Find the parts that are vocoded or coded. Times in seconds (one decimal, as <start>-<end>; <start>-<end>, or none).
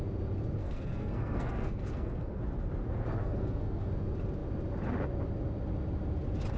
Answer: 0.6-2.4; 3.2-3.9